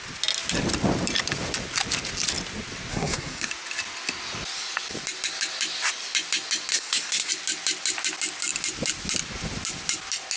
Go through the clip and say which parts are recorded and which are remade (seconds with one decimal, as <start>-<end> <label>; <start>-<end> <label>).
0.0-2.9 recorded; 2.9-3.5 remade; 3.5-6.7 recorded; 6.7-7.3 remade; 7.3-10.4 recorded